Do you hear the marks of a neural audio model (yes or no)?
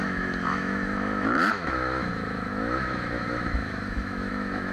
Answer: yes